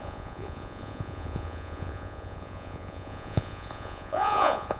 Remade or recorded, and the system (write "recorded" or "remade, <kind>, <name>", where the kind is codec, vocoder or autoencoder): remade, vocoder, Vocos